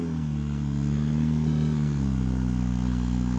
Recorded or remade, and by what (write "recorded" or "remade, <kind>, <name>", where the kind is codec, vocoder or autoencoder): remade, codec, SNAC